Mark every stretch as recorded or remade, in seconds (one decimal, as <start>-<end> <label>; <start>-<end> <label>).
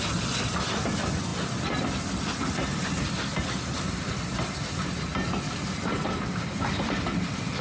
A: 0.0-7.6 recorded